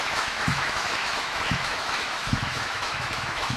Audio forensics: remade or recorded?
remade